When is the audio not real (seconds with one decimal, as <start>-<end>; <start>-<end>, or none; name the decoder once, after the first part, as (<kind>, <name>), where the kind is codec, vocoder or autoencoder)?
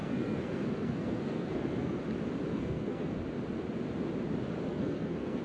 0.0-2.0 (codec, SNAC); 2.5-3.1; 4.7-5.4